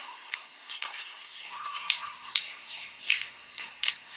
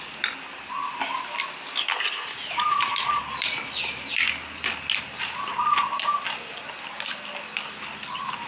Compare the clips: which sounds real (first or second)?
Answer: second